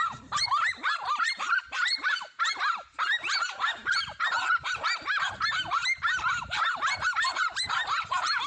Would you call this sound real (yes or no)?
no